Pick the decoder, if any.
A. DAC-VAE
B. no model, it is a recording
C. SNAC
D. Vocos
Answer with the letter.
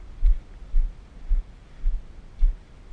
B